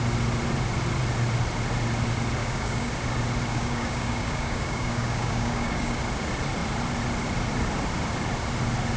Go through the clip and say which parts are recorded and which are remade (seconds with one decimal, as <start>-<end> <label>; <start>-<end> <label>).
0.0-2.4 recorded; 2.4-2.9 remade; 2.9-3.5 recorded; 3.5-6.0 remade; 6.0-9.0 recorded

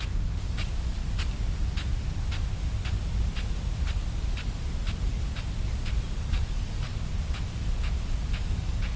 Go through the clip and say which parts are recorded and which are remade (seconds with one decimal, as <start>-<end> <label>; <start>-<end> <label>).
0.0-1.0 remade; 1.0-6.2 recorded; 6.2-6.9 remade; 6.9-8.4 recorded; 8.4-9.0 remade

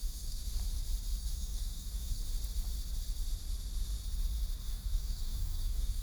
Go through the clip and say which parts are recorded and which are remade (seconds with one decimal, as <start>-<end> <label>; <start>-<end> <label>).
0.0-0.4 remade; 0.4-1.2 recorded; 1.2-2.2 remade; 2.2-4.7 recorded; 4.7-6.0 remade

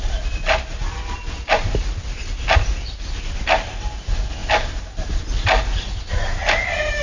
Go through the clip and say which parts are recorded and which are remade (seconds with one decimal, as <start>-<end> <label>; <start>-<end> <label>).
0.0-7.0 recorded

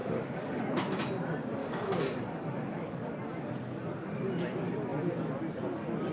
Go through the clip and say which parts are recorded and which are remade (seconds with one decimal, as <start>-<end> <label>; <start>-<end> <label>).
0.0-0.6 remade; 0.6-1.6 recorded; 1.6-3.1 remade; 3.1-6.1 recorded

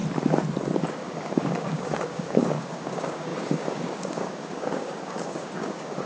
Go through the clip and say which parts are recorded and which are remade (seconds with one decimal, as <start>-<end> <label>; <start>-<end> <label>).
0.0-0.9 recorded; 0.9-6.1 remade

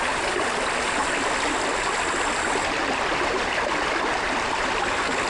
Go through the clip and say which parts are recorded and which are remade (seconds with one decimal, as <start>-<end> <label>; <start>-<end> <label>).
0.0-5.3 recorded